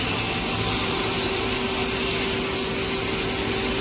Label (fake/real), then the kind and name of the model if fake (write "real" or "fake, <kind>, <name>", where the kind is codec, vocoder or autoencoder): real